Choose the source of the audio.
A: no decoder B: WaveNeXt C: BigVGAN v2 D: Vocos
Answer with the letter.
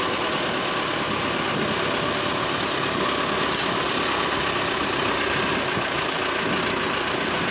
A